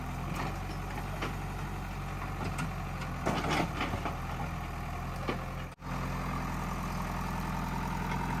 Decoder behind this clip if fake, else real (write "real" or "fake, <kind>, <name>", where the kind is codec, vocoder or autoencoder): real